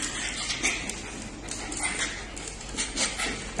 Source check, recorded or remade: recorded